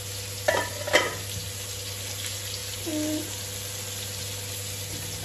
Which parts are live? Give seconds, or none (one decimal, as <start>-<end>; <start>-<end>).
0.0-5.2